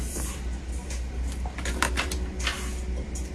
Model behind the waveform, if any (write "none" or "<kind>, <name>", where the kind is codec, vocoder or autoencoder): none